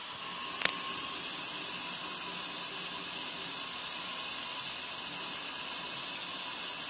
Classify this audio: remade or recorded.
recorded